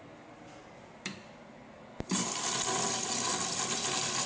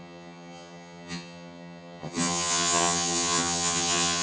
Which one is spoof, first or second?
second